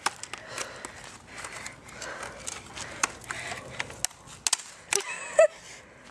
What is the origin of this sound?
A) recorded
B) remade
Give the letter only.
A